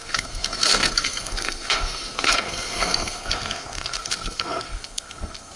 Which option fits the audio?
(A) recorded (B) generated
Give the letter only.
B